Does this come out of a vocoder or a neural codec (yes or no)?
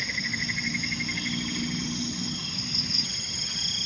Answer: no